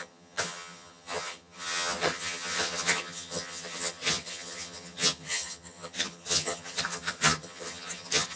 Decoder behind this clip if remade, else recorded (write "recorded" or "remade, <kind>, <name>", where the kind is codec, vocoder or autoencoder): remade, vocoder, HiFi-GAN